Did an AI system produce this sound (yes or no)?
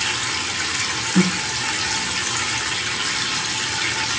no